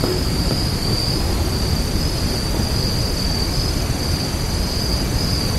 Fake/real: real